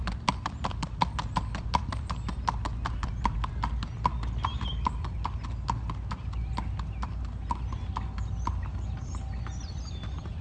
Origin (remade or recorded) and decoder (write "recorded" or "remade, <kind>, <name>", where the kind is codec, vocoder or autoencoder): recorded